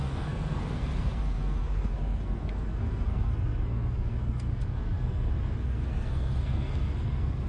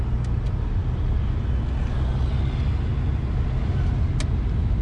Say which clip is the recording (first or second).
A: second